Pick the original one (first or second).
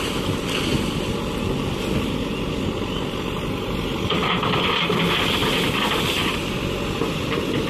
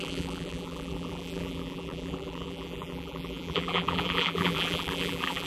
first